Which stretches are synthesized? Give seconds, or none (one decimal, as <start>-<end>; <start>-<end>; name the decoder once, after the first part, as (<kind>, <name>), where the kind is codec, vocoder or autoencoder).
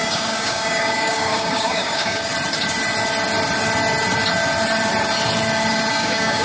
0.0-2.3 (codec, DAC); 5.9-6.4